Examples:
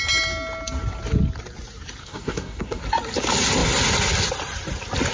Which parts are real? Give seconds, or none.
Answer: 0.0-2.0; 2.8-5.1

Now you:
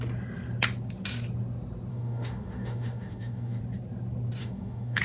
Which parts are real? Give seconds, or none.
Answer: 0.0-1.9; 3.6-4.4

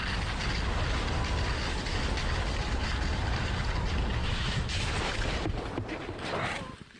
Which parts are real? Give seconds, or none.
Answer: 0.0-4.2; 4.9-7.0

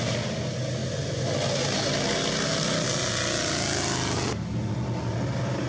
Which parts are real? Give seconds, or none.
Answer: 0.0-5.7

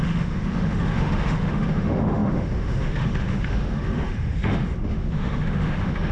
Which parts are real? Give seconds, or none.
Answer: none

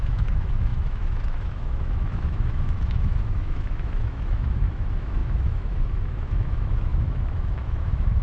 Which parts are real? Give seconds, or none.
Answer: none

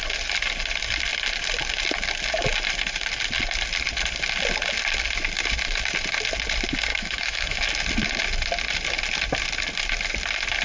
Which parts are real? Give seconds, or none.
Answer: 0.0-6.9; 7.6-10.6